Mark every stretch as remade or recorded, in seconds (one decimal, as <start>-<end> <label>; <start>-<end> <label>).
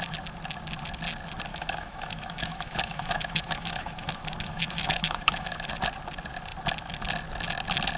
0.0-1.5 recorded; 1.5-5.7 remade; 5.7-8.0 recorded